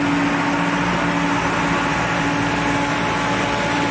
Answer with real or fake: real